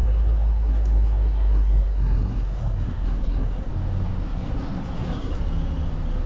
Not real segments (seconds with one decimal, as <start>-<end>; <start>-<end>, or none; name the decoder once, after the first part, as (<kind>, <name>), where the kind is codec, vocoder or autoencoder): 0.0-3.7 (codec, SNAC); 4.2-5.4